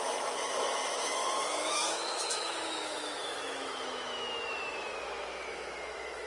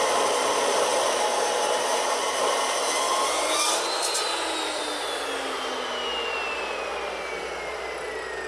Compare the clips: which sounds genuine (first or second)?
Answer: second